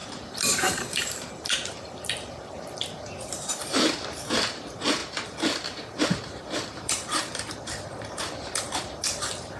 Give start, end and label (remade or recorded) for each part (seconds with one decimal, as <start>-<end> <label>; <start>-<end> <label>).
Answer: 0.0-9.6 remade